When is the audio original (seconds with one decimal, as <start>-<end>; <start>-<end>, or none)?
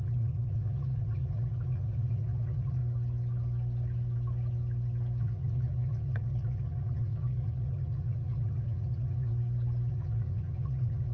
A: 2.8-5.2; 9.3-9.9